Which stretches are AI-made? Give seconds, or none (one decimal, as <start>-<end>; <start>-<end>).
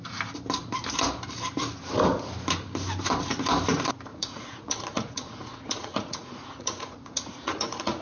4.1-8.0